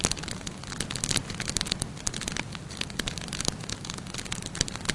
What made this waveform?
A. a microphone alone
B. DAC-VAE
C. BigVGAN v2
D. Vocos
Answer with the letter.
A